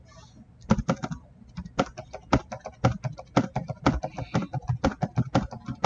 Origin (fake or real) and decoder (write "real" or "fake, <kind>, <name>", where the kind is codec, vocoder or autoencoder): real